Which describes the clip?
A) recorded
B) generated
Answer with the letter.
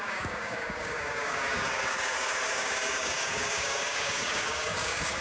B